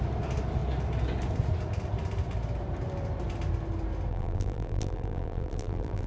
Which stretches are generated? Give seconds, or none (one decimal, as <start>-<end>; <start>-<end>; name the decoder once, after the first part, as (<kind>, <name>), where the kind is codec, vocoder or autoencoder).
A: 4.1-6.1 (vocoder, BigVGAN v2)